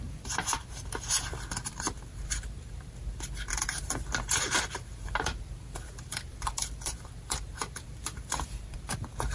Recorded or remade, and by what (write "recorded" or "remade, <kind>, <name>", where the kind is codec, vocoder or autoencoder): remade, vocoder, BigVGAN v2